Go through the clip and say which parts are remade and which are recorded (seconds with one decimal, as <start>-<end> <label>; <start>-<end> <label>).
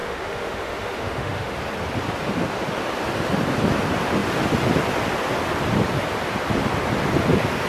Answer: 0.0-1.5 remade; 1.5-7.7 recorded